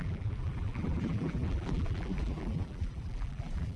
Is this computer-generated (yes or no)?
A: yes